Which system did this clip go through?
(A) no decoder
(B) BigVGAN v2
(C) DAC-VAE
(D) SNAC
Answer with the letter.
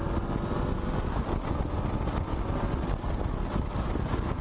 A